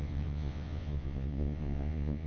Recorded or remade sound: remade